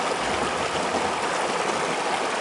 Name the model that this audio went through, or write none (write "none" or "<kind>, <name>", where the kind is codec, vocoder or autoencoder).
none